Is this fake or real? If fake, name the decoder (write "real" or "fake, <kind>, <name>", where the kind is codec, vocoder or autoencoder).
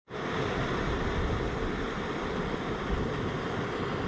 fake, vocoder, BigVGAN v2